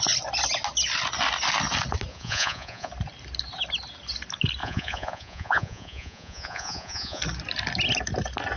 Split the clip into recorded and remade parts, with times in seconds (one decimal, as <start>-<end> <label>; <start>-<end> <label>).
0.0-2.1 recorded; 2.1-2.9 remade; 2.9-4.6 recorded; 4.6-7.2 remade; 7.2-8.6 recorded